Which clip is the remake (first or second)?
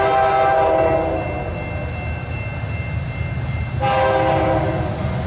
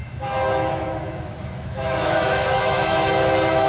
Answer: second